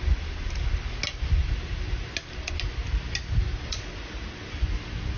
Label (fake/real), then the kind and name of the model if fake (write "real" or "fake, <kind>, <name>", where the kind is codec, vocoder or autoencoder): real